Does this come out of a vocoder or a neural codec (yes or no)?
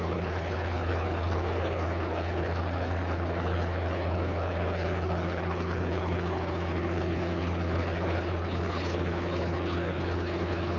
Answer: yes